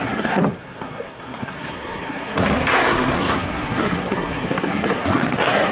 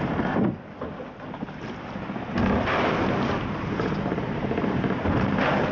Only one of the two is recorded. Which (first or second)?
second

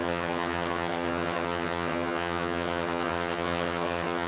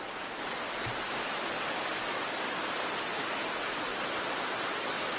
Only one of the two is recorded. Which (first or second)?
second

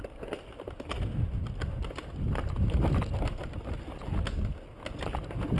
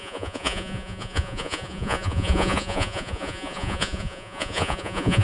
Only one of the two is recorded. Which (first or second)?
first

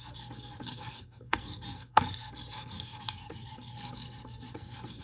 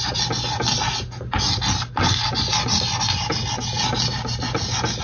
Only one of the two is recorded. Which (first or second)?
second